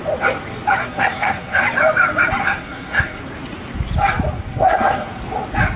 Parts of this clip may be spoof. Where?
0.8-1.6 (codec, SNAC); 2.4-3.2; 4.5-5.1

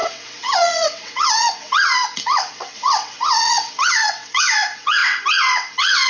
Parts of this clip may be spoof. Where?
0.0-6.1 (vocoder, WaveNeXt)